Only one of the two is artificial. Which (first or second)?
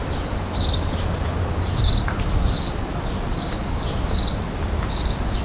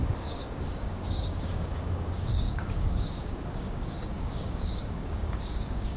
second